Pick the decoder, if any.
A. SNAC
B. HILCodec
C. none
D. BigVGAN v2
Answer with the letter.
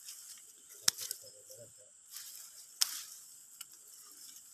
C